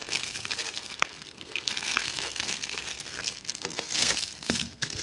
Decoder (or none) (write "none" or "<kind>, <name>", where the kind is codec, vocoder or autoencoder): codec, SNAC